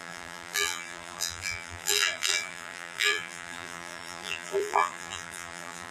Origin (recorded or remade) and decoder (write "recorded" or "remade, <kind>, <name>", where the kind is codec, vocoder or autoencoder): remade, vocoder, BigVGAN v2